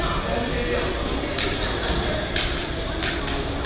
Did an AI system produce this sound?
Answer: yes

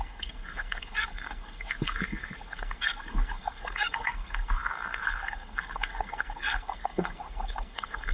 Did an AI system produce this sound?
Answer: yes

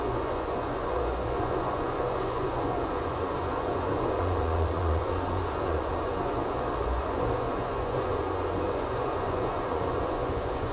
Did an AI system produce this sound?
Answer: yes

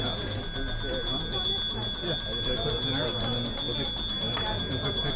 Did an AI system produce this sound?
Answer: no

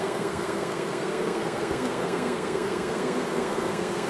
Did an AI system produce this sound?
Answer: yes